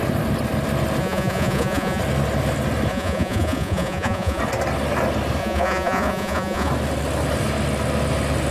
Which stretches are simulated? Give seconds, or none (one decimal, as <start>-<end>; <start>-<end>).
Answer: 1.0-2.0; 2.9-4.4; 5.4-6.7